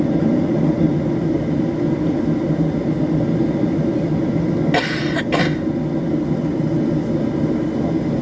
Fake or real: real